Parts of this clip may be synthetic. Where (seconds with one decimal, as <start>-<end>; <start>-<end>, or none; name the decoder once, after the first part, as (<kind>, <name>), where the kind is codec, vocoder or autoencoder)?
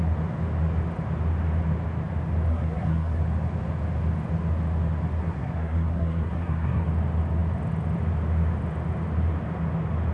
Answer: 2.5-3.2 (codec, SNAC); 5.2-6.9